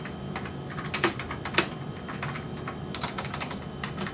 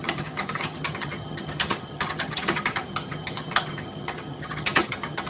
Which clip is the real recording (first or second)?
first